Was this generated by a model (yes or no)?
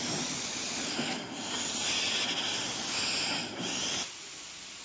no